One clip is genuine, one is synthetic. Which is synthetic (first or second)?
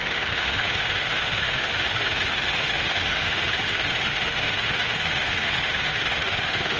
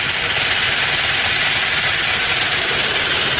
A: first